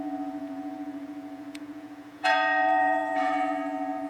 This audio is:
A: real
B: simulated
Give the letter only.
B